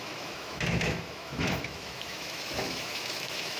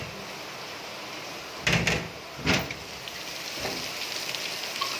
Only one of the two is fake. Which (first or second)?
first